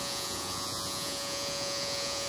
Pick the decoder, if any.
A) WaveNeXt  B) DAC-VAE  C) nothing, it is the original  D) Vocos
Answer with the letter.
D